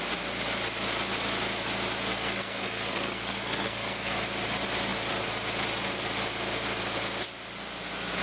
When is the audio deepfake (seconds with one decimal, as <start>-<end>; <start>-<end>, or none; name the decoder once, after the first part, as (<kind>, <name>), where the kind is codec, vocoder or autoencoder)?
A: 2.1-4.2 (codec, SNAC)